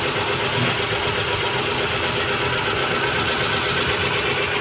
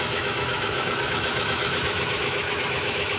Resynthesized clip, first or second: second